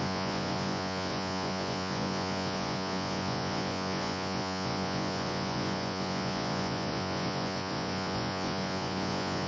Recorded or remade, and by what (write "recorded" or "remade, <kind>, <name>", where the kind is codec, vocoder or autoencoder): remade, vocoder, Vocos